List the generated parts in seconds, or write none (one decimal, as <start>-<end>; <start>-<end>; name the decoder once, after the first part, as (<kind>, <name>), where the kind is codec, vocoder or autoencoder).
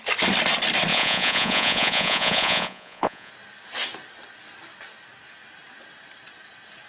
0.9-3.3 (vocoder, Vocos)